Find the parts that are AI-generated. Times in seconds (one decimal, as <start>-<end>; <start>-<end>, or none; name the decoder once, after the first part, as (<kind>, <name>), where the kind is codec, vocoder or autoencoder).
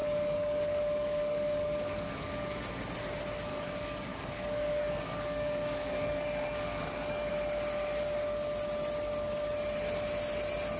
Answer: 0.0-2.6 (codec, DAC); 3.5-7.3